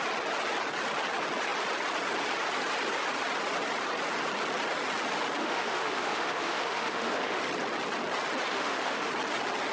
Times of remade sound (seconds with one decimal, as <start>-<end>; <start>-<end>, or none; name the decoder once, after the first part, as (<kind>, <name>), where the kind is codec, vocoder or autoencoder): 5.4-7.4 (autoencoder, DAC-VAE); 8.5-9.1